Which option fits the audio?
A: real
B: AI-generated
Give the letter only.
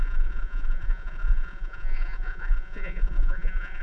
B